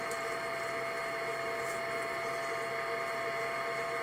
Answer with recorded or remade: recorded